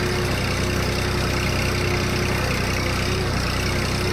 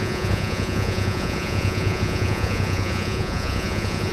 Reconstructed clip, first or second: second